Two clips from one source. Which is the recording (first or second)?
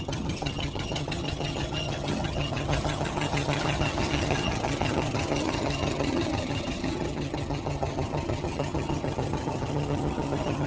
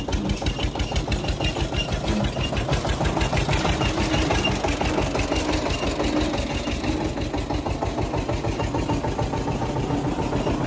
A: second